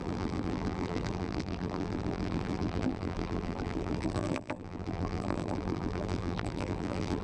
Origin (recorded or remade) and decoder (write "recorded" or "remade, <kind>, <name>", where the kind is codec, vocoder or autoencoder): remade, vocoder, BigVGAN v2